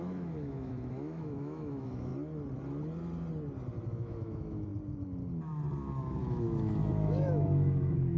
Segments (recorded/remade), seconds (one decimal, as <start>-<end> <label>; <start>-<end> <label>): 0.0-2.1 remade; 2.1-3.9 recorded; 3.9-4.7 remade; 4.7-6.2 recorded; 6.2-8.2 remade